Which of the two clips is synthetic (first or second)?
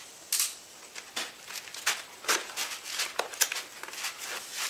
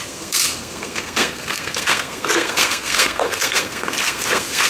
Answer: second